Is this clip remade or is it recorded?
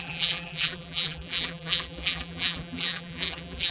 remade